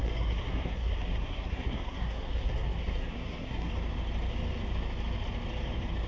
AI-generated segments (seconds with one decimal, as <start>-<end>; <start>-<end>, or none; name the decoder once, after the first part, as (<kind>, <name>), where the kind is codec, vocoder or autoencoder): 0.0-3.7 (codec, SNAC)